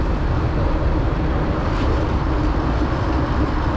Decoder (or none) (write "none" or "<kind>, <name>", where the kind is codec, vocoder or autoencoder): none